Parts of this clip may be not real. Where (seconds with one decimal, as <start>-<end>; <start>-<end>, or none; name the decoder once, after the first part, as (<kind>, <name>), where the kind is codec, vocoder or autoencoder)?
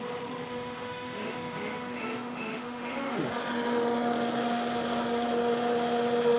0.5-3.3 (autoencoder, DAC-VAE)